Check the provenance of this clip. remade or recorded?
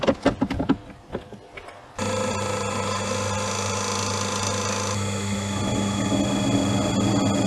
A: recorded